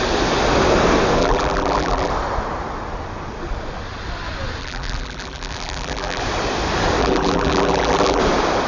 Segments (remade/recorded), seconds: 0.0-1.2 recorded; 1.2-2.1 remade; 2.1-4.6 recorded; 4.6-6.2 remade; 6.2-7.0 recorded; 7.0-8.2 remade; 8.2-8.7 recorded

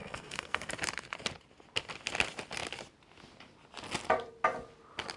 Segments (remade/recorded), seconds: 0.0-0.7 remade; 0.7-5.2 recorded

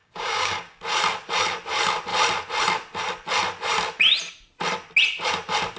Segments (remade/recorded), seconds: 0.0-0.8 remade; 0.8-5.8 recorded